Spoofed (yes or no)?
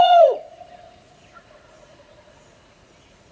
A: yes